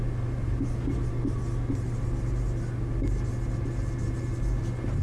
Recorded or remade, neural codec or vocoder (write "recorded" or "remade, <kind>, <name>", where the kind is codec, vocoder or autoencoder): recorded